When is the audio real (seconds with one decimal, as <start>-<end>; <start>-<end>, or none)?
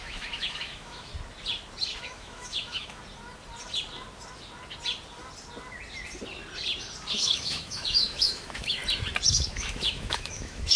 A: 1.1-2.0; 3.0-7.1; 8.8-9.3